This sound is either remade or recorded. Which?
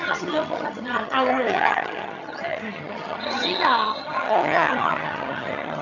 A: remade